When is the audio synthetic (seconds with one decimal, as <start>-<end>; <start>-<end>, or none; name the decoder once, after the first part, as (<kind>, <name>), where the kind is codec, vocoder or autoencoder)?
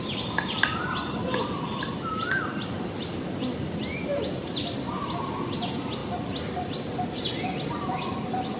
none